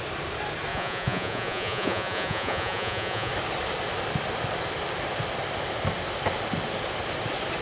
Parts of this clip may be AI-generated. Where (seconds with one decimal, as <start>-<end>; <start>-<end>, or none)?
0.7-3.3